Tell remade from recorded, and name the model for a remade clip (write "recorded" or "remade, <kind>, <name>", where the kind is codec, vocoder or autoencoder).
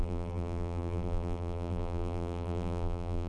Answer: remade, vocoder, BigVGAN v2